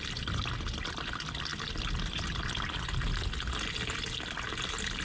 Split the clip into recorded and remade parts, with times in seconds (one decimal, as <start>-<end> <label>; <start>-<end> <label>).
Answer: 0.0-5.0 recorded